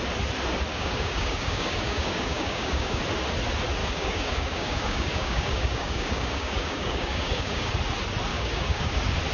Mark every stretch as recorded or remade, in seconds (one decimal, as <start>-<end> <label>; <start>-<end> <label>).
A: 0.0-0.7 recorded; 0.7-3.0 remade; 3.0-3.8 recorded; 3.8-7.7 remade; 7.7-8.3 recorded; 8.3-8.9 remade; 8.9-9.3 recorded